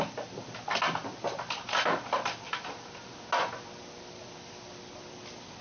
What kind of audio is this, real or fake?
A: real